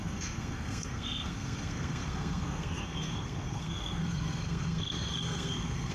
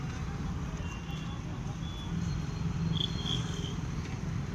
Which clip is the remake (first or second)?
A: first